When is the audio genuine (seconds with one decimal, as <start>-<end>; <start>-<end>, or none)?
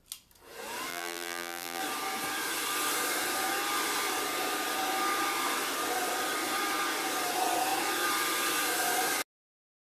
0.0-0.9; 1.8-9.9